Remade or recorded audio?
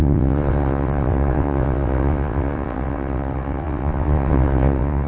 remade